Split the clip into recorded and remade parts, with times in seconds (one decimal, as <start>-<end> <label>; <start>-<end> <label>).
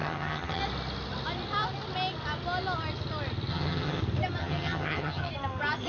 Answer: 0.0-0.6 remade; 0.6-3.5 recorded; 3.5-4.0 remade; 4.0-4.4 recorded; 4.4-5.3 remade; 5.3-5.9 recorded